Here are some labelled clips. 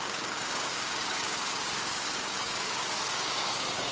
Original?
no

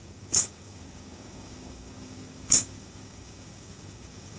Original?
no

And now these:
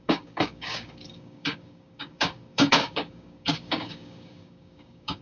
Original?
no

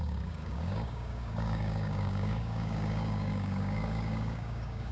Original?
no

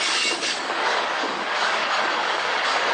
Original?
no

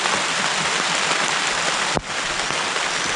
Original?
yes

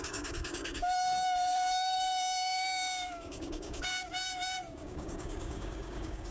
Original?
no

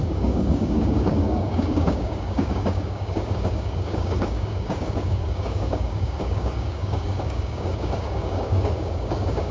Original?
no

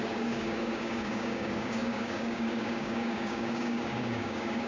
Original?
no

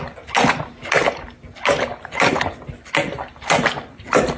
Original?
yes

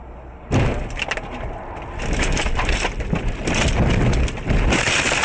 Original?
yes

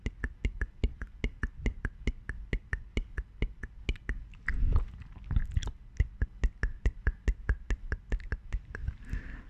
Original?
yes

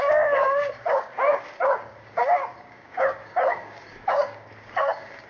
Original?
no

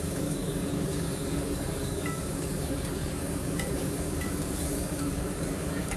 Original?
no